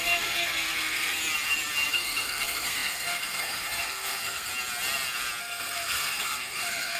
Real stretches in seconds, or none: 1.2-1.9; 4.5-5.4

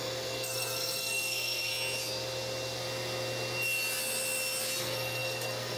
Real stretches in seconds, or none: 1.7-4.8

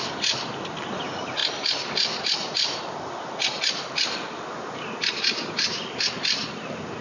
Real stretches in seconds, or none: 0.0-7.0

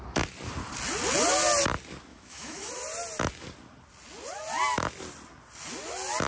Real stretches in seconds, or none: 0.0-2.1; 2.7-6.3

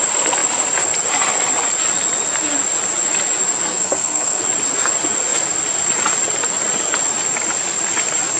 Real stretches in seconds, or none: 0.0-3.7; 4.4-8.4

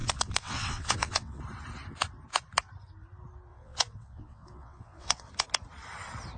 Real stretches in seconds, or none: 1.4-3.5; 5.3-6.4

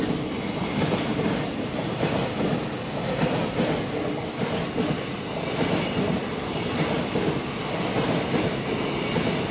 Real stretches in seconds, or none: 0.0-1.1; 2.6-9.5

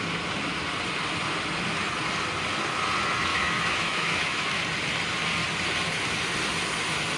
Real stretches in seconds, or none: 0.0-3.3; 4.6-7.2